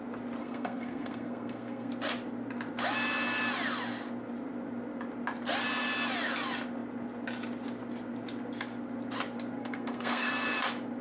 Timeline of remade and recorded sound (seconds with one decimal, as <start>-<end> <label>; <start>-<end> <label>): 0.0-0.4 recorded; 0.4-1.9 remade; 1.9-9.6 recorded; 9.6-10.3 remade; 10.3-11.0 recorded